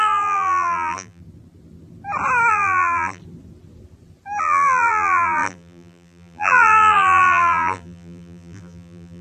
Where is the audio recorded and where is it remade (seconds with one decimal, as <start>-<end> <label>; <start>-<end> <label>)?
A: 0.0-1.2 remade; 1.2-2.5 recorded; 2.5-3.2 remade; 3.2-4.4 recorded; 4.4-9.2 remade